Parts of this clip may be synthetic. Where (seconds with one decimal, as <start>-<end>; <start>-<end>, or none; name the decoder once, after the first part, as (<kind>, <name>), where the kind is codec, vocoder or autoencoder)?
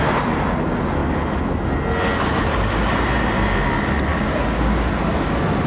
4.1-4.9 (codec, DAC)